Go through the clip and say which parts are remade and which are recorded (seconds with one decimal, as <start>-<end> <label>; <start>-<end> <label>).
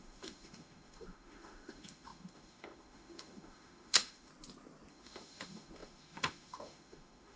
0.0-4.3 remade; 4.3-4.9 recorded; 4.9-7.4 remade